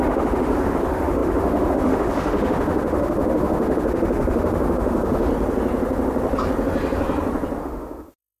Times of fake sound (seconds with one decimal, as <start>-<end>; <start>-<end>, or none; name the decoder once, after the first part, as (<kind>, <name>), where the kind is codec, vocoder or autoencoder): 0.0-5.3 (autoencoder, DAC-VAE); 7.6-8.4